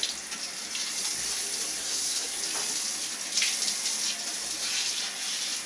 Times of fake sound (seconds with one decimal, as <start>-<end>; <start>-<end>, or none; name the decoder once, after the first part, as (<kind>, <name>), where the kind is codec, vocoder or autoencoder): 1.8-2.4 (codec, SNAC)